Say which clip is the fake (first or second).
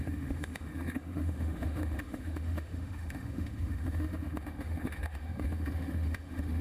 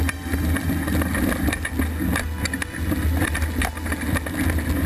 first